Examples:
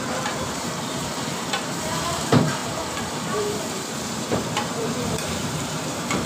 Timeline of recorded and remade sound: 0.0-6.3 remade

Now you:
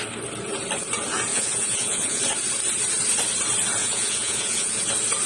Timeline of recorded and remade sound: 0.0-1.3 recorded; 1.3-2.2 remade; 2.2-3.8 recorded; 3.8-4.8 remade; 4.8-5.3 recorded